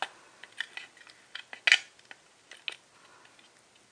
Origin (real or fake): real